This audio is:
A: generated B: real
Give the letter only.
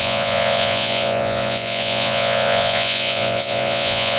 A